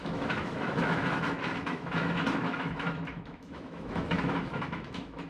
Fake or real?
fake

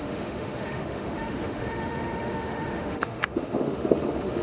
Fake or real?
fake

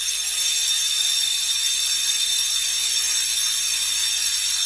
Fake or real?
real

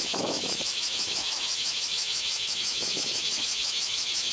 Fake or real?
fake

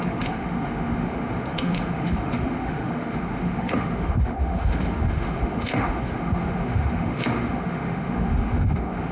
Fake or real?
fake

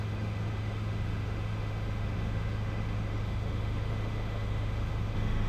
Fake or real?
fake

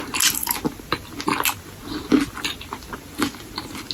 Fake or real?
real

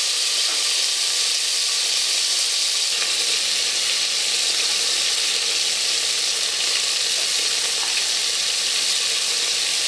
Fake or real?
real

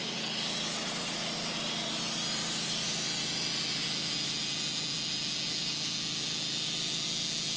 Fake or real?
real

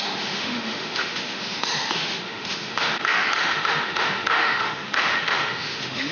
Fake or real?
fake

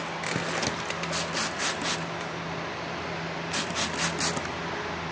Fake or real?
real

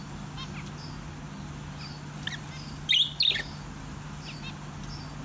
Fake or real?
real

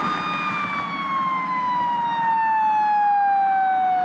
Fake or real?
real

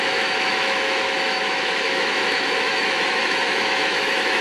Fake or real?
fake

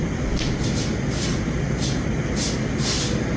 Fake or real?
real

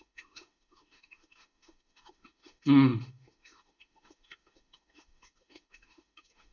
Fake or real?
fake